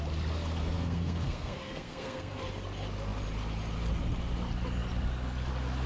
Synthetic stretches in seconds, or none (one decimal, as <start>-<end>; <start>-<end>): 0.6-2.4